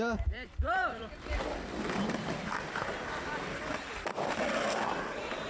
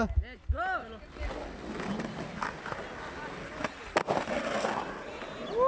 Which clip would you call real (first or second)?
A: second